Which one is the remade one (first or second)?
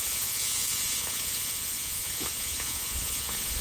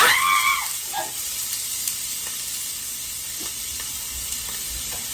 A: first